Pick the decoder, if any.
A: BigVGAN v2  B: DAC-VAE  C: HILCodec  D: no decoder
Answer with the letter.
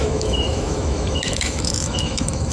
B